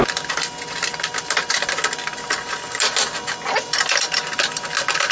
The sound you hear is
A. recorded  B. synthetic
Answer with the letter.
A